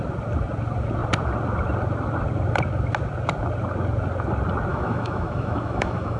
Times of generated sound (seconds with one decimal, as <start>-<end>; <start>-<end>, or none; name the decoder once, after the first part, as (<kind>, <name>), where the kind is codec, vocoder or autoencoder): 4.7-6.2 (autoencoder, DAC-VAE)